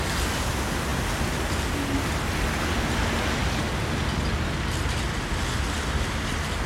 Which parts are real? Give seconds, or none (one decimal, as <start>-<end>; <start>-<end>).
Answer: 0.0-6.7